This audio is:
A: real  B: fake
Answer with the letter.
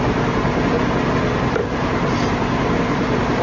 A